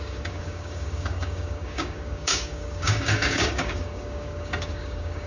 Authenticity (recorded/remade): remade